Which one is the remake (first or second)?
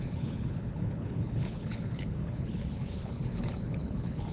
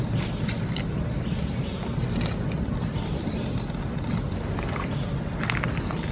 first